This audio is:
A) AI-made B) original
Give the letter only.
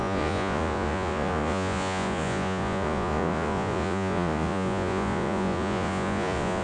A